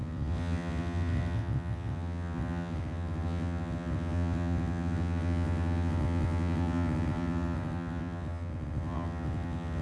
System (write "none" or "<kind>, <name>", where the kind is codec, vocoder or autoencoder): vocoder, WaveNeXt